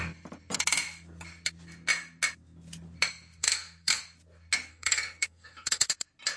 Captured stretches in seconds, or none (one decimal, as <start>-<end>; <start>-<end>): 0.0-3.4; 4.0-4.7; 5.9-6.4